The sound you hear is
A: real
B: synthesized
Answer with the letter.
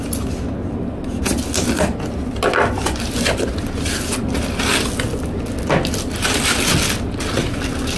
A